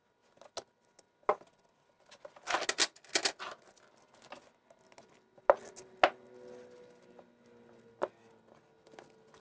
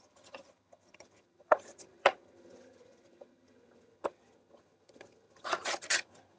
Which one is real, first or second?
first